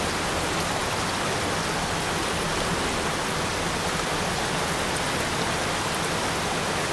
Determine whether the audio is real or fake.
real